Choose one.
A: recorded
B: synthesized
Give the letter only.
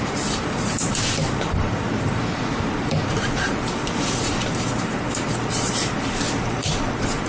B